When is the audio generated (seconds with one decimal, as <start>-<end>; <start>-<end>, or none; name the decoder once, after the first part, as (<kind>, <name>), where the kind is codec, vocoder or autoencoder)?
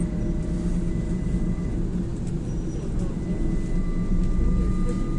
none